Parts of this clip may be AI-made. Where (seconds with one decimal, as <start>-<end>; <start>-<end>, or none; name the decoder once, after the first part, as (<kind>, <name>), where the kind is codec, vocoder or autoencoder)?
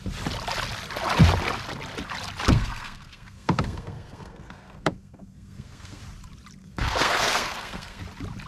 2.5-6.0 (codec, SNAC); 6.6-8.0